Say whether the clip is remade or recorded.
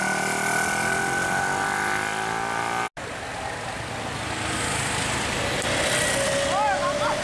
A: recorded